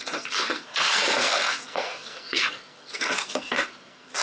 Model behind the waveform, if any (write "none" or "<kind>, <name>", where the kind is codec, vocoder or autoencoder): codec, SNAC